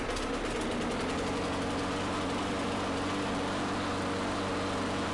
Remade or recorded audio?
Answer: recorded